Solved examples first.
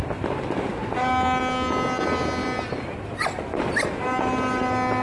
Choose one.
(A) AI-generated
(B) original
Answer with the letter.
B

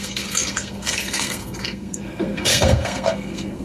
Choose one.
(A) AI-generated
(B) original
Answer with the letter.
A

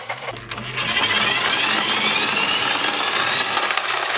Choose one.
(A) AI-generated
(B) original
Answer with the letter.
B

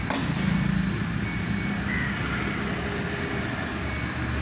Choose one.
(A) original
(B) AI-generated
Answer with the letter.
A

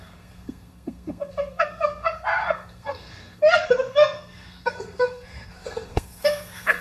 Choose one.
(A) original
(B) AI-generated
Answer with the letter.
B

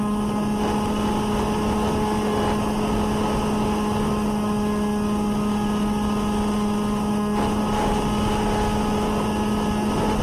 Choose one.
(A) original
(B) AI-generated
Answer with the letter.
A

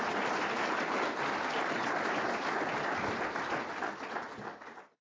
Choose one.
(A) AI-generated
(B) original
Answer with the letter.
B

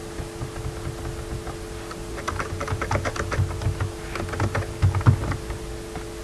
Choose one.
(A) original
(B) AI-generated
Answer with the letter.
A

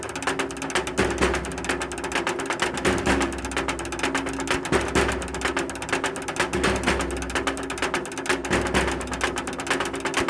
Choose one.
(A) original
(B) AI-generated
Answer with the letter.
A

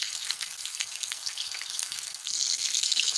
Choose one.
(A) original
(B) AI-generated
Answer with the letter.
B